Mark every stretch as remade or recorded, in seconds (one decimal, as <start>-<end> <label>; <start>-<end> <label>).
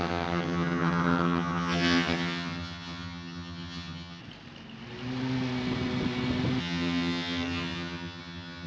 0.0-4.2 remade; 4.2-6.6 recorded; 6.6-8.7 remade